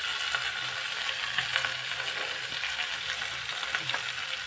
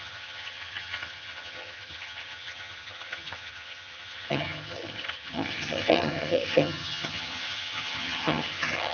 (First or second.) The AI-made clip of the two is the second